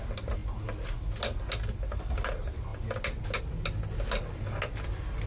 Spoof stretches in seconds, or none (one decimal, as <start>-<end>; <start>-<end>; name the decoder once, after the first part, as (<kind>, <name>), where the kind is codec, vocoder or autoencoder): none

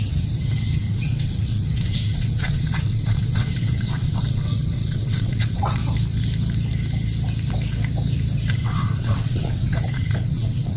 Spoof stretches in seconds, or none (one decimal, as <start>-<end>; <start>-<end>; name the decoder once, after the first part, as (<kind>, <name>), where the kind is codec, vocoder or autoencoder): 0.0-5.8 (vocoder, WaveNeXt); 8.5-10.8

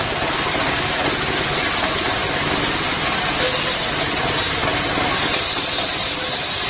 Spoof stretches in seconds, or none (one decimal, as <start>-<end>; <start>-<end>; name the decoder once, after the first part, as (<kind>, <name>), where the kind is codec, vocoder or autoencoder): none

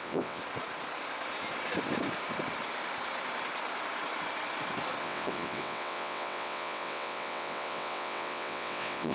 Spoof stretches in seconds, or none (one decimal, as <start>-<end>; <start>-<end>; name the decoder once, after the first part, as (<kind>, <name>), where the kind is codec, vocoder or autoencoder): 0.0-0.4 (vocoder, WaveNeXt); 5.0-9.1

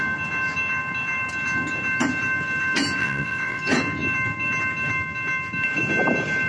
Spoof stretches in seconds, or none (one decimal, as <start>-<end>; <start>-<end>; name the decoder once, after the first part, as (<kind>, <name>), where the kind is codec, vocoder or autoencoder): 3.0-3.6 (vocoder, WaveNeXt)

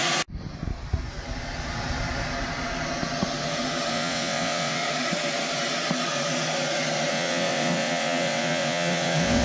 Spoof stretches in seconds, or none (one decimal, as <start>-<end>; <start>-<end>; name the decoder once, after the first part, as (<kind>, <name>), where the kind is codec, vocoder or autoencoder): 3.9-4.8 (vocoder, WaveNeXt); 7.1-9.4